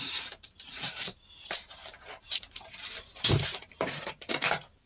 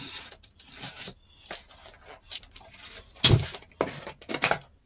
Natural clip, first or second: second